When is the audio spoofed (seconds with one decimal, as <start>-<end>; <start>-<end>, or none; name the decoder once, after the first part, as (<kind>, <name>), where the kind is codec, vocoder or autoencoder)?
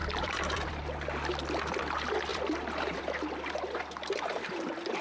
0.0-0.7 (vocoder, BigVGAN v2); 2.3-3.0